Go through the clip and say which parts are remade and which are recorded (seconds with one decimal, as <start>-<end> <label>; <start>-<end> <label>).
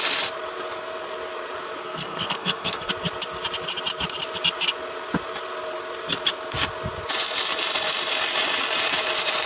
0.0-1.8 recorded; 1.8-2.9 remade; 2.9-9.5 recorded